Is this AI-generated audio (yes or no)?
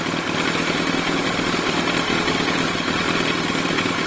no